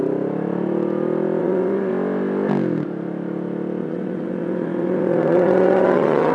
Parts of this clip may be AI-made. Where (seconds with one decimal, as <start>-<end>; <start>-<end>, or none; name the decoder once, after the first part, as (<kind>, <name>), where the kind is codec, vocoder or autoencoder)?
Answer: 1.4-1.9 (vocoder, WaveNeXt); 3.8-6.3